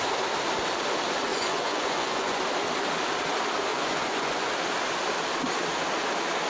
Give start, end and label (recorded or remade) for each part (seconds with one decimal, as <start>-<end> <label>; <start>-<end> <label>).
0.0-1.3 recorded; 1.3-2.4 remade; 2.4-3.7 recorded; 3.7-4.5 remade; 4.5-6.5 recorded